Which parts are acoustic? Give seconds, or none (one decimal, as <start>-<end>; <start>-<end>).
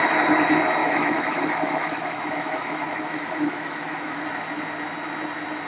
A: 0.0-0.8; 4.2-5.7